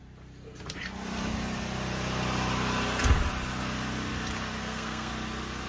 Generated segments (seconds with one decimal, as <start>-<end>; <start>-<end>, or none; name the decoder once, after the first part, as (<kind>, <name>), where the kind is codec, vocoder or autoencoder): 4.6-5.1 (codec, SNAC)